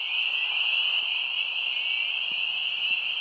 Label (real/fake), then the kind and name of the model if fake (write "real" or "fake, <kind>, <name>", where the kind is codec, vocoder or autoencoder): real